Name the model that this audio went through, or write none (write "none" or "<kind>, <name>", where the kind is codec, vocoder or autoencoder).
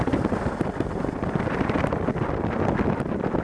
vocoder, BigVGAN v2